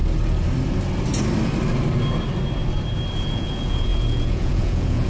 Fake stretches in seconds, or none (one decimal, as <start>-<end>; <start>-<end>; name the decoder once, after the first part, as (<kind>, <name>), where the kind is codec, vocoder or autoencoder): 3.1-5.1 (vocoder, Vocos)